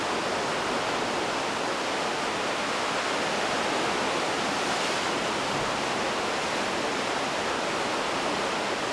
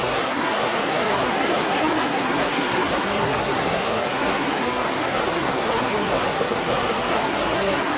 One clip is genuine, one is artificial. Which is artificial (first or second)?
second